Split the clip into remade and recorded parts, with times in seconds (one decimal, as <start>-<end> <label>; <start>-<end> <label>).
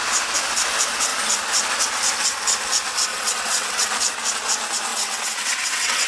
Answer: 0.0-3.1 recorded; 3.1-3.9 remade; 3.9-4.9 recorded; 4.9-6.1 remade